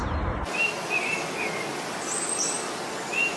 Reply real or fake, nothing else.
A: real